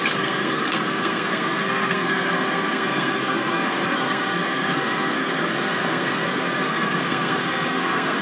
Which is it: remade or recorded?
remade